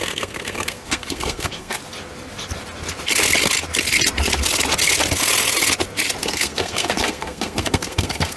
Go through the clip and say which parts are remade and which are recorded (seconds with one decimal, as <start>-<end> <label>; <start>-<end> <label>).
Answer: 0.0-1.8 remade; 1.8-6.2 recorded; 6.2-8.4 remade